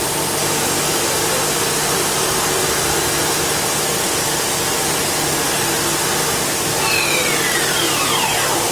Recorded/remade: recorded